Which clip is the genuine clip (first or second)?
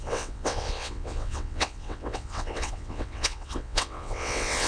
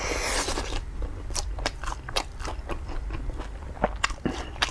second